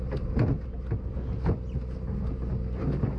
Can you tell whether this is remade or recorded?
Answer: recorded